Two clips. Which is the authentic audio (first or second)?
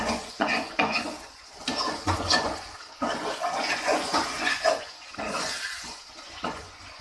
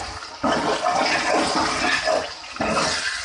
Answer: second